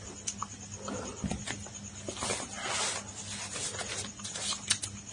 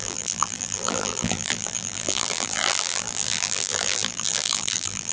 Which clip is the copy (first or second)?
second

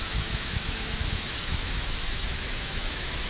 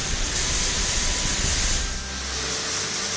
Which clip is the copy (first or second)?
first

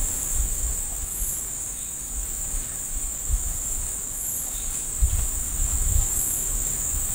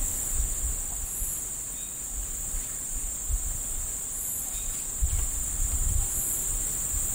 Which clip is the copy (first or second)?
first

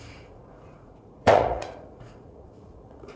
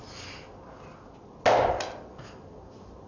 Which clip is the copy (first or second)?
first